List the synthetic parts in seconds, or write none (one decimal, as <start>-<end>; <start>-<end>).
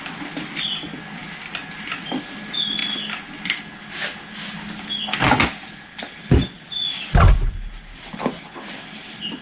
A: none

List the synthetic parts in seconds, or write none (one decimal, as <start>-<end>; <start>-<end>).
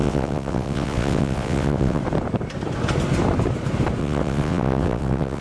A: 0.0-2.0; 4.0-5.4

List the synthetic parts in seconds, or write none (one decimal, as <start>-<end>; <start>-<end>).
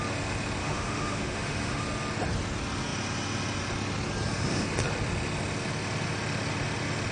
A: 0.6-1.8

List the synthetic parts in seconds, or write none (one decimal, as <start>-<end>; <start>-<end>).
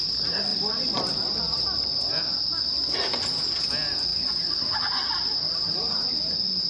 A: 0.5-1.4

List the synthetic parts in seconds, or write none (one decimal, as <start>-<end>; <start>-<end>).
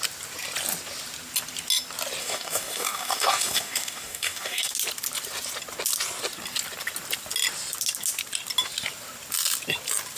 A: 2.2-4.7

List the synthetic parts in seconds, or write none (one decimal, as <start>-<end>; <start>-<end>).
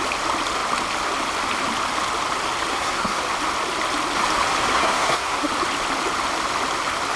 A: 2.7-3.2; 4.7-5.5